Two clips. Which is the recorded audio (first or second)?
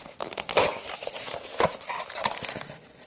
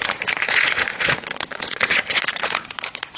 first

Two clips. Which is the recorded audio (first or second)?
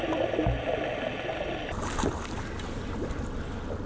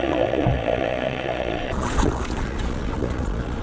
first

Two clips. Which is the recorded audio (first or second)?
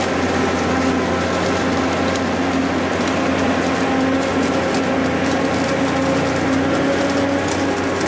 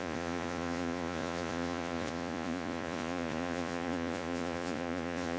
first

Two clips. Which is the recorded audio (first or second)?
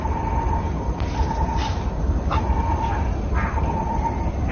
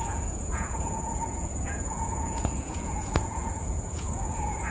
first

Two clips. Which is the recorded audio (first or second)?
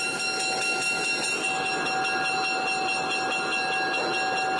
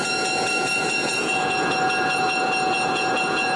first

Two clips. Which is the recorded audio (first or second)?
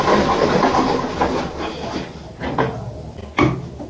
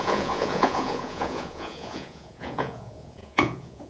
first